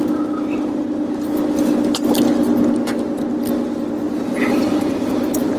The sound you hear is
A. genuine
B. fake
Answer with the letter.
A